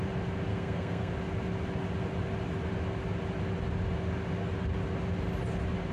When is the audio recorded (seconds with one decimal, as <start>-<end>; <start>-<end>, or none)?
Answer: 0.0-0.5; 1.1-5.9